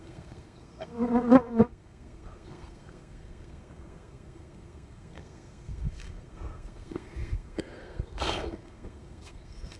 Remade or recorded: remade